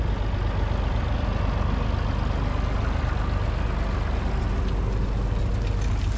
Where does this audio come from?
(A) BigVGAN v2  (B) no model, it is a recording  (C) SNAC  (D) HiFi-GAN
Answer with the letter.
B